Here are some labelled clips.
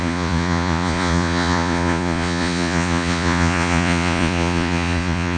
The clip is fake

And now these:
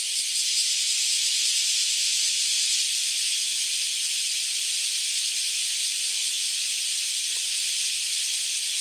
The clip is real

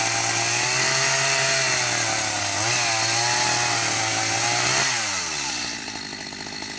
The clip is real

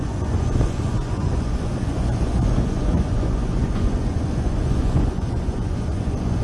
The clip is fake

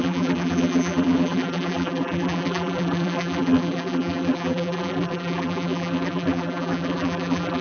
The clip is fake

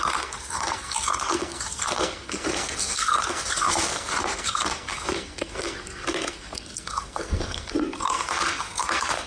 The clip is fake